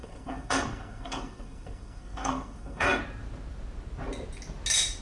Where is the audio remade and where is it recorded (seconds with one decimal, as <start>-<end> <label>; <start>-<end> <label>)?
0.0-3.0 remade; 3.0-5.0 recorded

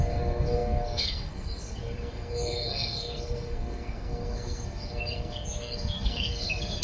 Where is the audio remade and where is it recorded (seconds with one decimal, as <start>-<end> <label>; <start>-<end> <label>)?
0.0-6.8 remade

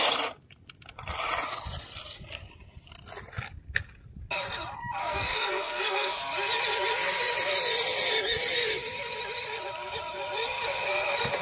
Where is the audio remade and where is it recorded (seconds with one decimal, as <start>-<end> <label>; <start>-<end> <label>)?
0.0-5.0 recorded; 5.0-6.2 remade; 6.2-11.4 recorded